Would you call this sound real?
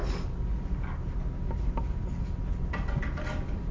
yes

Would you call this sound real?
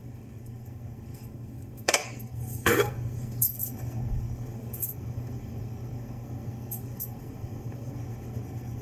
no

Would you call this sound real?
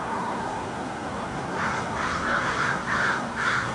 no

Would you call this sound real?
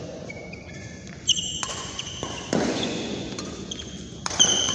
no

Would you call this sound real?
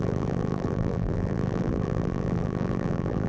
no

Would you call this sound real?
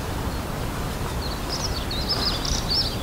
yes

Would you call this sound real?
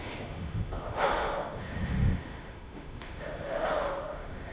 no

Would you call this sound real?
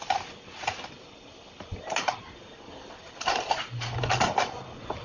yes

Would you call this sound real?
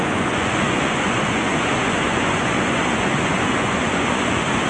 no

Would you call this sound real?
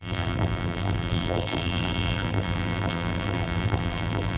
no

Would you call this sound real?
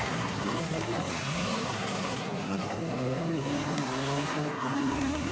no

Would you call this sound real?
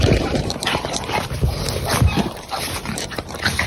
no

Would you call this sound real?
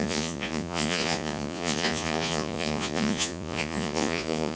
no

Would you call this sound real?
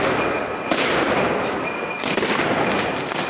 yes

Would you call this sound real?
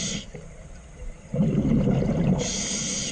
yes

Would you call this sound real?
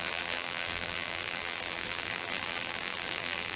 no